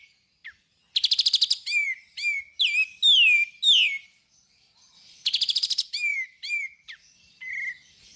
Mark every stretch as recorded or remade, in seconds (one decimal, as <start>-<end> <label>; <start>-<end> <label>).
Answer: 0.0-6.1 recorded; 6.1-7.5 remade; 7.5-8.2 recorded